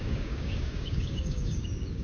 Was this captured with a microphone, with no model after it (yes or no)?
no